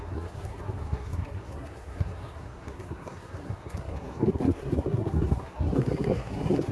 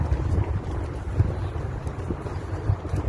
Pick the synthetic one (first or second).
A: first